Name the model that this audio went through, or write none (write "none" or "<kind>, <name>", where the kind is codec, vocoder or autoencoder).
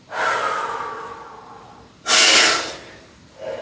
none